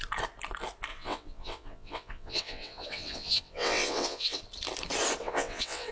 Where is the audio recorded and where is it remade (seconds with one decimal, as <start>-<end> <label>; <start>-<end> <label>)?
0.0-0.9 recorded; 0.9-4.4 remade; 4.4-5.2 recorded; 5.2-5.9 remade